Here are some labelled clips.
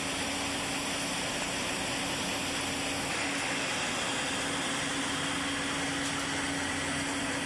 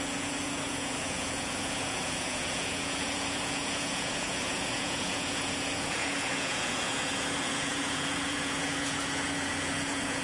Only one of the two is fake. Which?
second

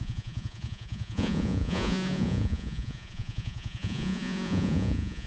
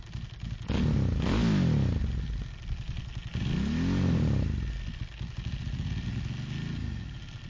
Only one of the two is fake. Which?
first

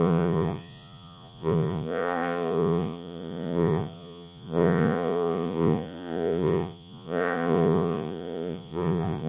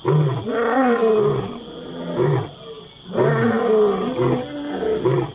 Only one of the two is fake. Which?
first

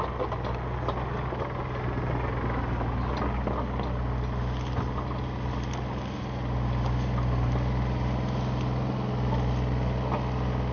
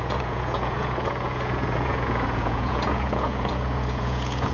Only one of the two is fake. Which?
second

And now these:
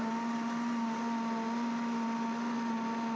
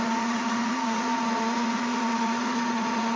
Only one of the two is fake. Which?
second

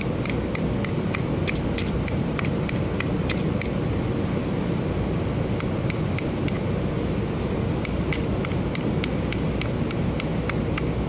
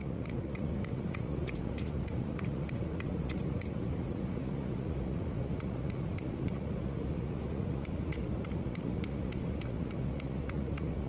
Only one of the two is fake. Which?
second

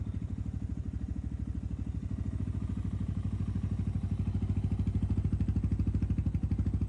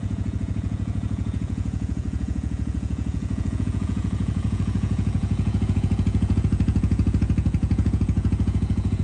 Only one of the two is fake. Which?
second